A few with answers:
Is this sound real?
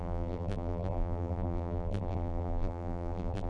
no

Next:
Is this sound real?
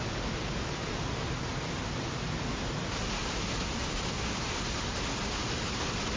yes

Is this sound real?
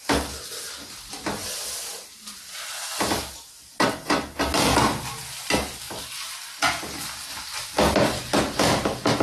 yes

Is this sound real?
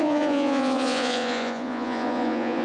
no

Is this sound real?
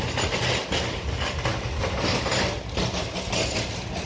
yes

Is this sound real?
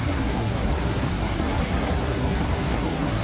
no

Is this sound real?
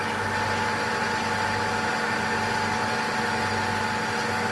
yes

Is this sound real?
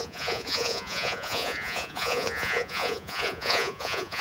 no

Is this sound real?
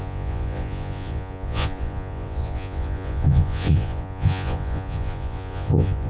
no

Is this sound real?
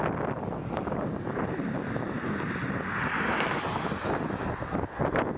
yes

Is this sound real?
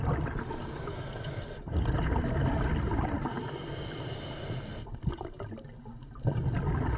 yes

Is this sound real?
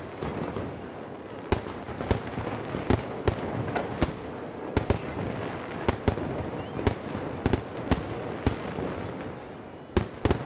yes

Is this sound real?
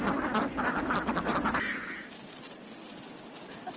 yes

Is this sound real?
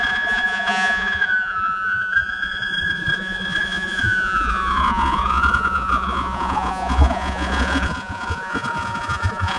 no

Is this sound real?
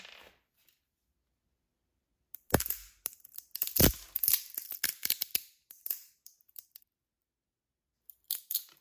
yes